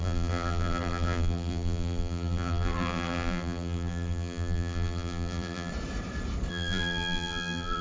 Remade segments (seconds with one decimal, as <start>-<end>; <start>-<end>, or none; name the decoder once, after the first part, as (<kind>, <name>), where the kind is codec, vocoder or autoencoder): 0.0-5.7 (vocoder, BigVGAN v2); 6.5-7.8